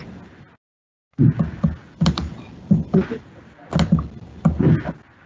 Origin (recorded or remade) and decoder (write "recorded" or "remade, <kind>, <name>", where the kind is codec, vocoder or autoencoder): recorded